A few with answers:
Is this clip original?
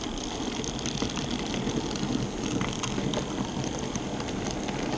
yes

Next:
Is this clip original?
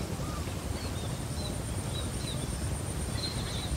yes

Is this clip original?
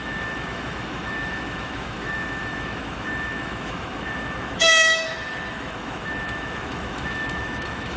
no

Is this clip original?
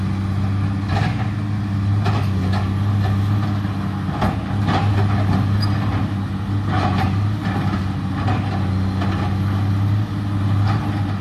yes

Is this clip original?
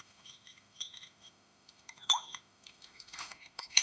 no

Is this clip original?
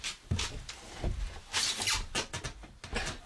yes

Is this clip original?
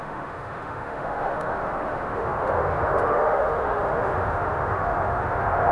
no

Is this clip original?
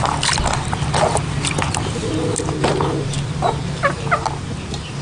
yes